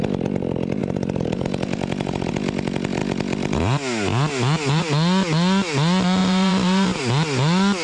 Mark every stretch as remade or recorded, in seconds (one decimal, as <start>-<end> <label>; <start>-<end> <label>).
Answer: 0.0-0.8 recorded; 0.8-2.3 remade; 2.3-6.2 recorded; 6.2-7.0 remade; 7.0-7.8 recorded